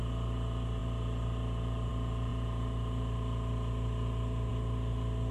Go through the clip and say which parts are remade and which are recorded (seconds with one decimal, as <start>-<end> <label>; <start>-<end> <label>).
0.0-5.3 recorded